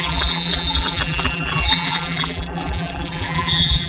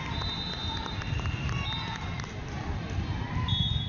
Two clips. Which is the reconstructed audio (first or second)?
first